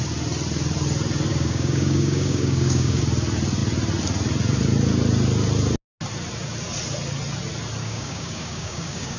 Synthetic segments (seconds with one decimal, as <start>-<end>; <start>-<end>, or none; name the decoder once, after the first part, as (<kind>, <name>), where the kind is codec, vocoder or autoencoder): 1.3-3.0 (codec, DAC); 7.8-9.2